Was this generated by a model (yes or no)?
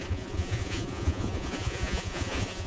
yes